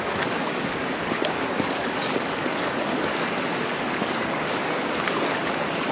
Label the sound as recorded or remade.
remade